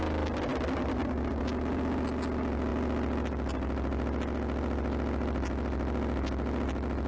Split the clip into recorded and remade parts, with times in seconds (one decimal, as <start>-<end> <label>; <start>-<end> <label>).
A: 0.0-7.1 recorded